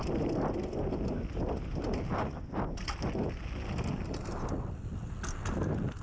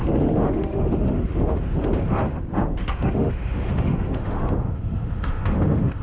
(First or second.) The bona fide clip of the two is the first